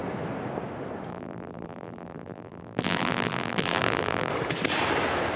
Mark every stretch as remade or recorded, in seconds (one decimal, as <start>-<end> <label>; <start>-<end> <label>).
0.0-1.1 recorded; 1.1-4.3 remade; 4.3-5.4 recorded